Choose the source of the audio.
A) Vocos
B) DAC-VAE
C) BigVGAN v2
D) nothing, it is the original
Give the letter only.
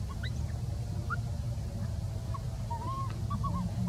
D